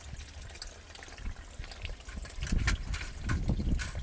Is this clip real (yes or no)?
yes